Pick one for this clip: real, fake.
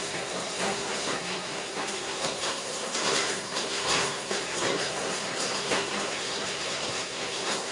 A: fake